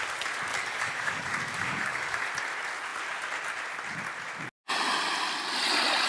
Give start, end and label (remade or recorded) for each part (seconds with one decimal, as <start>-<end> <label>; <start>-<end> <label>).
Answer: 0.0-0.5 recorded; 0.5-2.3 remade; 2.3-6.1 recorded